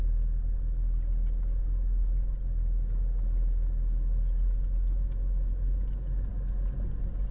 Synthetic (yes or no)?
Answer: no